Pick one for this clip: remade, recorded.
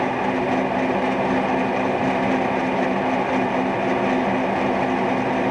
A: recorded